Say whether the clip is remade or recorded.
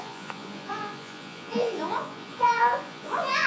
remade